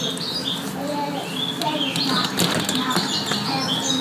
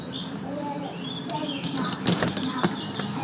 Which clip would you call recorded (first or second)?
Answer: first